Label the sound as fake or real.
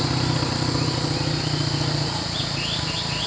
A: real